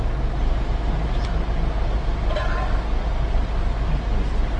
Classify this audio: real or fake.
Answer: real